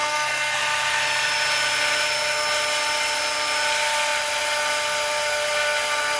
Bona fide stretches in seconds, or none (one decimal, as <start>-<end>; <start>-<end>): 0.6-6.2